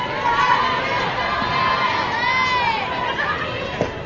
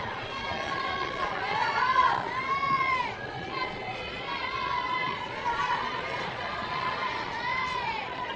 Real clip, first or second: first